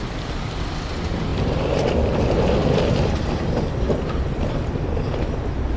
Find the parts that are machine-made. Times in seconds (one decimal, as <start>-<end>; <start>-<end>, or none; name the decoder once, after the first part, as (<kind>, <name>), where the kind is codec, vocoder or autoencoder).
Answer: 1.3-4.7 (vocoder, BigVGAN v2)